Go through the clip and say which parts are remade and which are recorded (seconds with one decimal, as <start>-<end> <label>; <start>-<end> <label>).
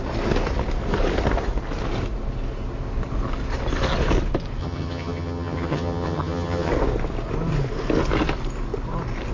0.0-4.6 recorded; 4.6-6.7 remade; 6.7-9.3 recorded